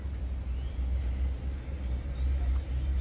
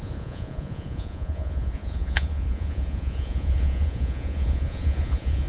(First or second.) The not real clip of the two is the second